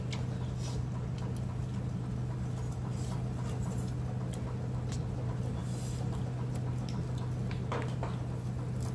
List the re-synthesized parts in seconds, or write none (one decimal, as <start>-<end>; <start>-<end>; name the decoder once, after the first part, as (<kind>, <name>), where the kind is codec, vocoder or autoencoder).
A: none